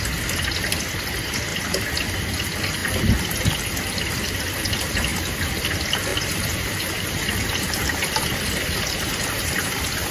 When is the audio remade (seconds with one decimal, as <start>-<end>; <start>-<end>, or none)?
6.1-10.1